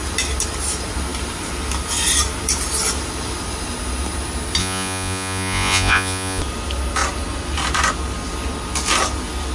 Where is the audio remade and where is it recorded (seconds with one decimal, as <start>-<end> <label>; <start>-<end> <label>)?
0.0-4.6 recorded; 4.6-6.4 remade; 6.4-9.5 recorded